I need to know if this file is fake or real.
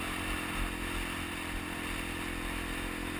real